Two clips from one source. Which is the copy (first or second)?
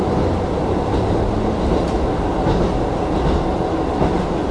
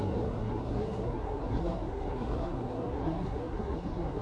second